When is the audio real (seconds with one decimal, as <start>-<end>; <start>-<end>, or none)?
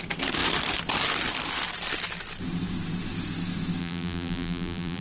0.0-3.8